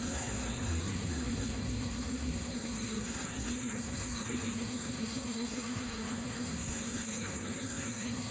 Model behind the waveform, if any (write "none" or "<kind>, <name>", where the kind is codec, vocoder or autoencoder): codec, SNAC